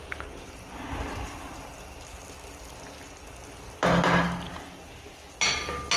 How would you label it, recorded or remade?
recorded